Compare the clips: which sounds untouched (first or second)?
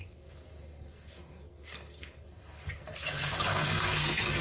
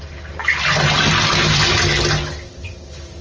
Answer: second